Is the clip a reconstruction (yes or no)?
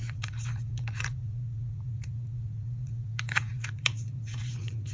yes